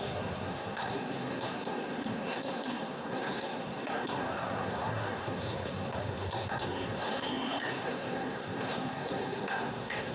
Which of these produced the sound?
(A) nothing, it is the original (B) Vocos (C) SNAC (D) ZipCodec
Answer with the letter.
C